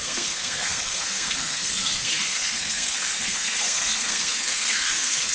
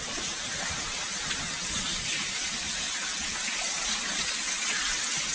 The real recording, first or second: second